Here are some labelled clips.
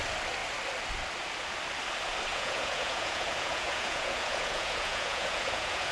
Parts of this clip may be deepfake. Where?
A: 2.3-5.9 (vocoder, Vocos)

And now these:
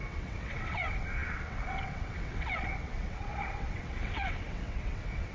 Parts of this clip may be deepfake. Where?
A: 0.0-5.3 (vocoder, WaveNeXt)